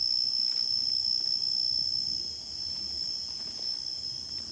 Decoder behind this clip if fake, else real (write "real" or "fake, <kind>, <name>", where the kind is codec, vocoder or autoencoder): real